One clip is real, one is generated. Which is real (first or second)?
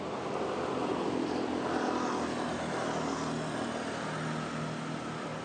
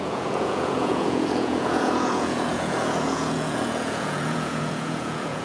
first